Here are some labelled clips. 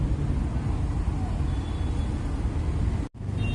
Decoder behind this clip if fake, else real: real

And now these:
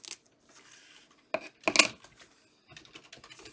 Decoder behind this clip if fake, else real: real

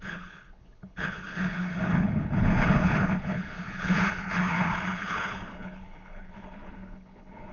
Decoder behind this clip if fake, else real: fake, codec, HILCodec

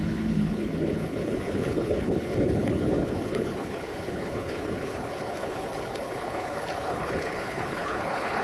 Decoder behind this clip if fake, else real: fake, codec, HILCodec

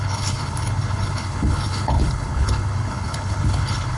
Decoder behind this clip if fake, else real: fake, codec, HILCodec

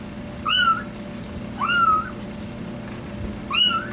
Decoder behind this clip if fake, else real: real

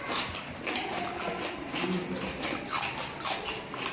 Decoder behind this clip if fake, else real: real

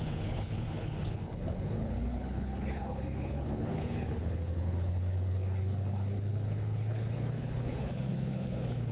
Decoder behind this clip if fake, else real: fake, codec, HILCodec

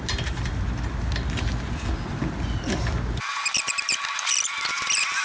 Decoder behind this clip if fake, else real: real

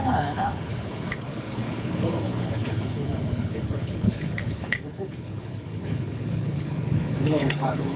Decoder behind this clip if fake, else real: fake, codec, HILCodec